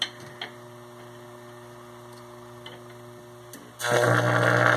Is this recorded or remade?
recorded